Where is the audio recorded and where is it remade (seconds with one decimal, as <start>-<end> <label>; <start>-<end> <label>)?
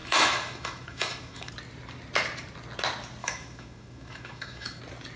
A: 0.0-1.5 remade; 1.5-3.2 recorded; 3.2-4.8 remade; 4.8-5.2 recorded